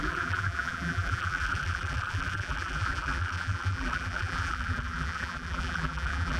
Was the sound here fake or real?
fake